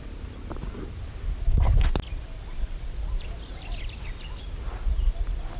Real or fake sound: real